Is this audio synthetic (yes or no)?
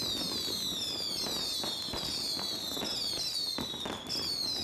no